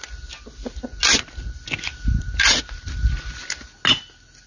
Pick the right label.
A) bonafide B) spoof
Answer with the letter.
A